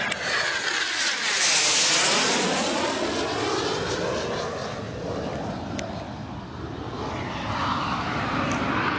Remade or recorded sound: recorded